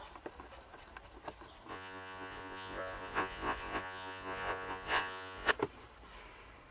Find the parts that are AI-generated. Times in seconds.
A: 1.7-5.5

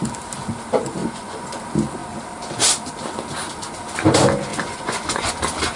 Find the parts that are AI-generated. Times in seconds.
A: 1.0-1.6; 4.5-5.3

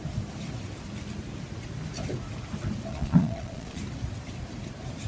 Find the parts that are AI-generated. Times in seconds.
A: 2.9-3.8

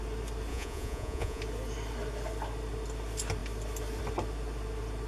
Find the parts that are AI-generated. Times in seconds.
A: 0.5-1.4

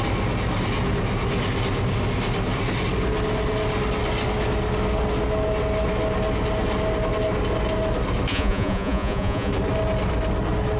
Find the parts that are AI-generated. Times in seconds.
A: 8.3-9.5

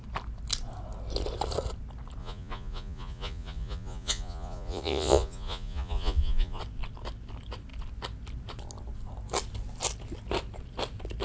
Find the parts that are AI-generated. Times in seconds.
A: 2.2-6.6